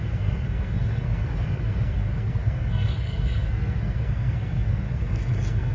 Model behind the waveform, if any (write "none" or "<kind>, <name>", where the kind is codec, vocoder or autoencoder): codec, SNAC